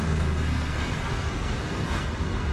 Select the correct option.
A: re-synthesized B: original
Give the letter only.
A